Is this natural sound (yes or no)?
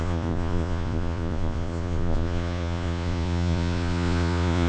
no